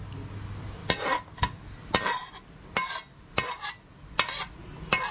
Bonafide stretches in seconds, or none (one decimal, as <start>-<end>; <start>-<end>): 0.0-5.1